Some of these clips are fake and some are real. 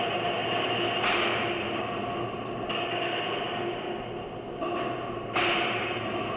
real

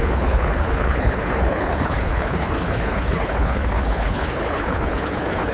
fake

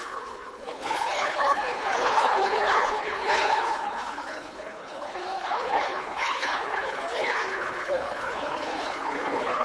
fake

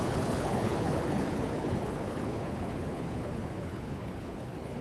fake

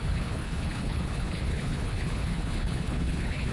fake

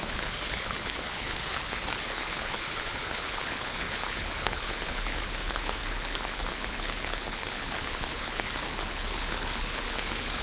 fake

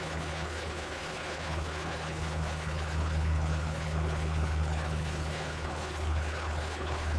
fake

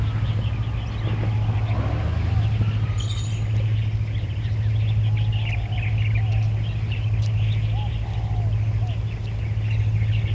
real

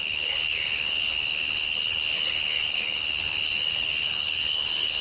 fake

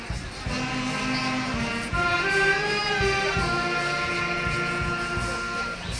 real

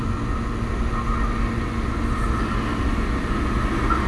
real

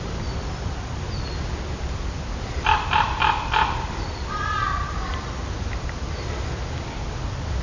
real